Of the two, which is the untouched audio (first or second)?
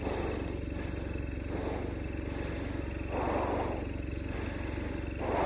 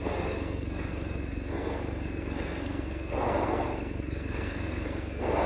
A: first